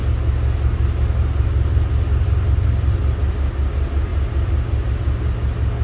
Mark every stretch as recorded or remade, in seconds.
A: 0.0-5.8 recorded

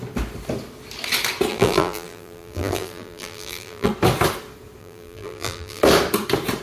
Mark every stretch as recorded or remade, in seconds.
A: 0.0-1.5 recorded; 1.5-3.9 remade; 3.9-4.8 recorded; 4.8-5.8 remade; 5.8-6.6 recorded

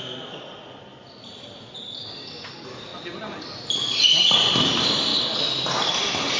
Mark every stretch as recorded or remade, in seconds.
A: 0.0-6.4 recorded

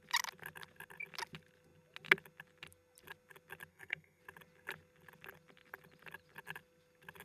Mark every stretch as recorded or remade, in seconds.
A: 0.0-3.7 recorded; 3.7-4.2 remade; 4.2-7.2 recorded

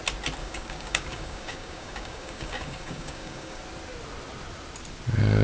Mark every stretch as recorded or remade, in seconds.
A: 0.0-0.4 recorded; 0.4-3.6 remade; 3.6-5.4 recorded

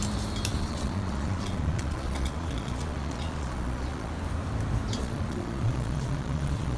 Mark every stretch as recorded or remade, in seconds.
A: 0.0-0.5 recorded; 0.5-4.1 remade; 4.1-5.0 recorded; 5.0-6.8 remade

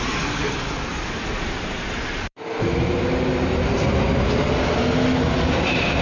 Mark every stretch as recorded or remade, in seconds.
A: 0.0-0.9 recorded; 0.9-4.5 remade; 4.5-6.0 recorded

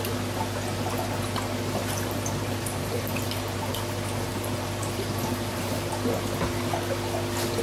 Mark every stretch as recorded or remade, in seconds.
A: 0.0-1.8 recorded; 1.8-3.7 remade; 3.7-4.3 recorded; 4.3-5.9 remade; 5.9-7.6 recorded